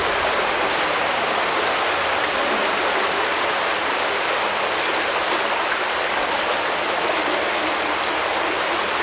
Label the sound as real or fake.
real